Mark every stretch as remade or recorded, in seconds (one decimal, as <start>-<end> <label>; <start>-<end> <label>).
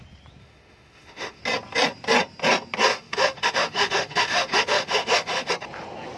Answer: 0.0-0.4 recorded; 0.4-1.4 remade; 1.4-2.9 recorded; 2.9-5.5 remade; 5.5-6.2 recorded